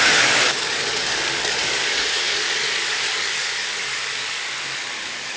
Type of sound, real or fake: fake